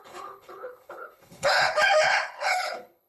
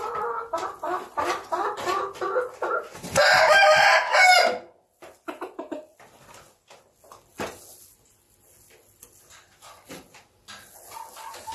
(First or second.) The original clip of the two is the second